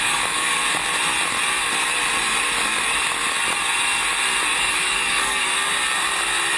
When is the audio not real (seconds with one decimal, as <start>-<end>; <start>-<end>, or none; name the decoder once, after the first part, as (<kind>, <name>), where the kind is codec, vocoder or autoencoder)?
0.0-0.6 (codec, DAC); 4.6-5.5